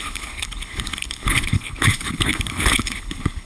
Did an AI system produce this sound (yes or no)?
yes